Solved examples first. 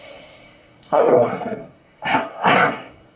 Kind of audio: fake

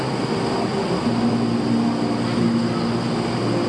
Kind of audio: real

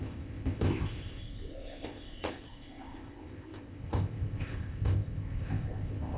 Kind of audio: fake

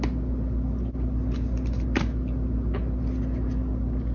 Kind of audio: real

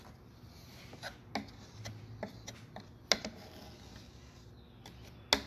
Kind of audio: real